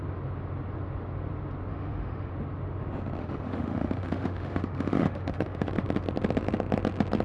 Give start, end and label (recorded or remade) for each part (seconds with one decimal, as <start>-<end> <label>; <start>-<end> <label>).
0.0-1.7 recorded; 1.7-2.3 remade; 2.3-3.2 recorded; 3.2-5.7 remade; 5.7-7.2 recorded